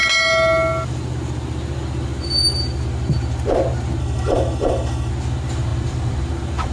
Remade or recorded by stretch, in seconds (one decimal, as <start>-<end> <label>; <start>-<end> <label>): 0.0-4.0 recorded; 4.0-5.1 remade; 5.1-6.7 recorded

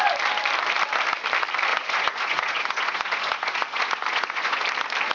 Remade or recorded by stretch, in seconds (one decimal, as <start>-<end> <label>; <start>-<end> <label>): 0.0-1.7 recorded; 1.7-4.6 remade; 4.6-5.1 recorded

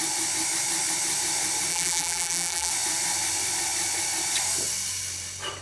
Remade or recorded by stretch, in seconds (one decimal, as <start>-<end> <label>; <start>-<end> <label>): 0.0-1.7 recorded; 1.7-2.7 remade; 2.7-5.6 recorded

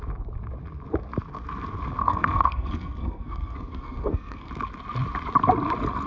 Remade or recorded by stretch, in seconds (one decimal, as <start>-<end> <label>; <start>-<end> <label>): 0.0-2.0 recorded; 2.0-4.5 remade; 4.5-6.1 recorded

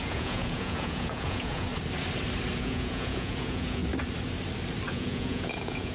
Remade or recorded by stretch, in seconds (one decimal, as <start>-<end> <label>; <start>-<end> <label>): 0.0-1.7 remade; 1.7-2.6 recorded; 2.6-3.8 remade; 3.8-4.9 recorded; 4.9-5.9 remade

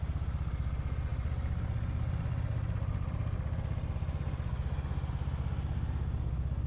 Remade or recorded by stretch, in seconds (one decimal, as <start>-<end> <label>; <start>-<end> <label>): 0.0-6.7 recorded